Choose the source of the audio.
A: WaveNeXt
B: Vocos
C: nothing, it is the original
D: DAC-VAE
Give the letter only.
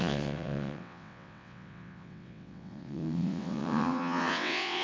A